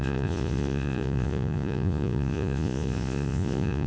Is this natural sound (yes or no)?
no